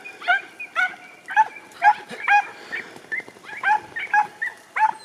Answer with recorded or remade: recorded